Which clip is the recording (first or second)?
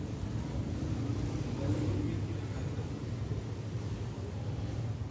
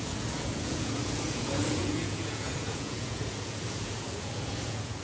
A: first